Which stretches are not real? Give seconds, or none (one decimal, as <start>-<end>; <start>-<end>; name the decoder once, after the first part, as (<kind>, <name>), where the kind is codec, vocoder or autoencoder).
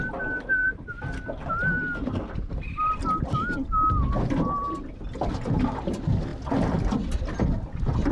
none